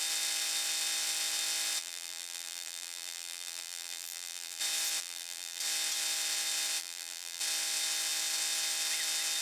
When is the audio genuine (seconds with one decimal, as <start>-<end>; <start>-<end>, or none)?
0.0-1.8; 4.6-5.0; 5.6-6.8; 7.4-9.4